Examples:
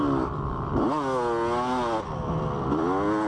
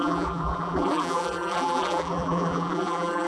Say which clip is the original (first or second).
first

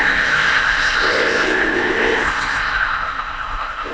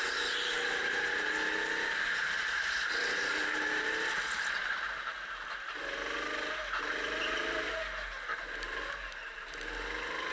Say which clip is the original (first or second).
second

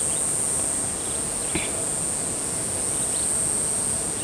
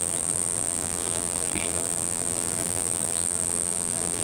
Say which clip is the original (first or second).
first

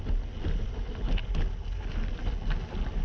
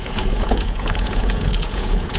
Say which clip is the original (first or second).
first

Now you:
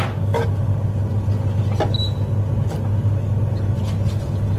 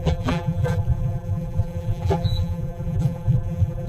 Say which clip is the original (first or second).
first